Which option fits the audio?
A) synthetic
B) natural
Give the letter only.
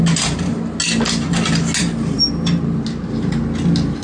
B